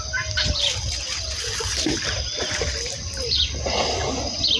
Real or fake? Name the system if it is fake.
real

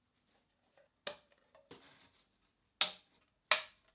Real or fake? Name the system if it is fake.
real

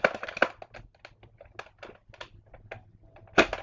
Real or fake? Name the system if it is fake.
real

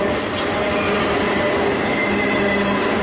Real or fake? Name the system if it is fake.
real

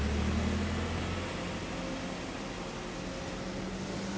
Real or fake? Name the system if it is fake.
real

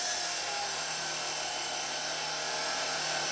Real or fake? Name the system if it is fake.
real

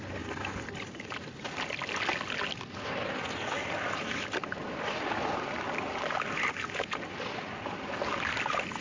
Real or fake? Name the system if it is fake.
real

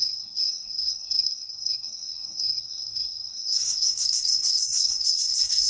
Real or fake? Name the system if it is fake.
fake, codec, SNAC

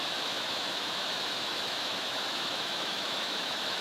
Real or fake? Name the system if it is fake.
fake, autoencoder, DAC-VAE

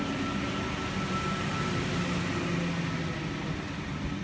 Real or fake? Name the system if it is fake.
real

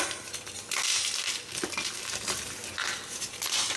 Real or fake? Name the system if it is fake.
real